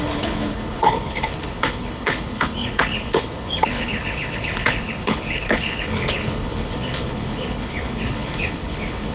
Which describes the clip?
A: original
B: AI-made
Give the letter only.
B